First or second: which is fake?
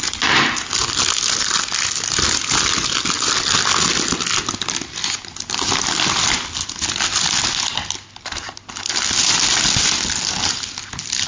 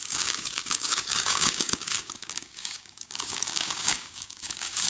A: second